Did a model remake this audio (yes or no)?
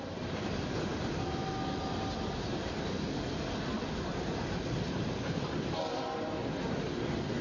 no